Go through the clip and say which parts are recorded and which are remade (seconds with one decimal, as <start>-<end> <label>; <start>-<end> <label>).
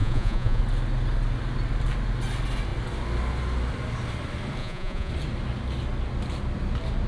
0.0-0.6 remade; 0.6-4.6 recorded; 4.6-5.1 remade; 5.1-7.1 recorded